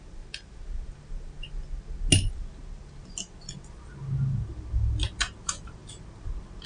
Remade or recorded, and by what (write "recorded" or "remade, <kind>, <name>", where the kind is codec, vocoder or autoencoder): recorded